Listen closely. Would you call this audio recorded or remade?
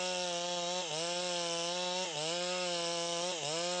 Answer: recorded